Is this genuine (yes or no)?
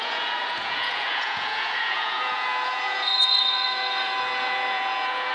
no